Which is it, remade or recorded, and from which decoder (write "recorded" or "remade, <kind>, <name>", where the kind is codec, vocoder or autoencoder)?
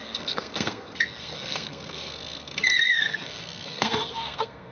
remade, codec, SNAC